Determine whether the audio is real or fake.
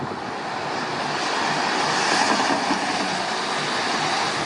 real